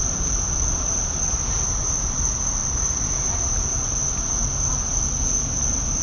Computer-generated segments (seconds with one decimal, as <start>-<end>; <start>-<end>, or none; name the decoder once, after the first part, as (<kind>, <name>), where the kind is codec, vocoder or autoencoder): none